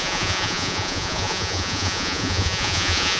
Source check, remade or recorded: remade